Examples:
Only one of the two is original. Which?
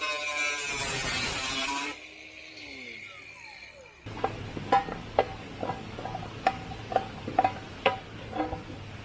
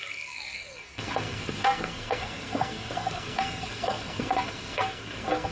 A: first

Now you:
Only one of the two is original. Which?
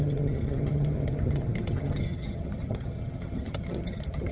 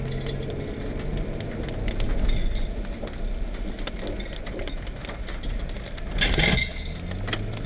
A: second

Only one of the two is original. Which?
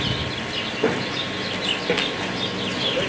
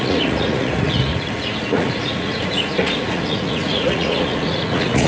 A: first